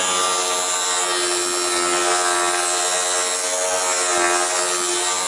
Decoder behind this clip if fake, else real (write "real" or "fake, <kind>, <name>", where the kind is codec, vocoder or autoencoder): real